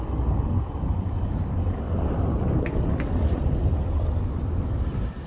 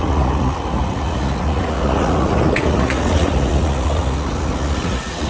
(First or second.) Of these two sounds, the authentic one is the first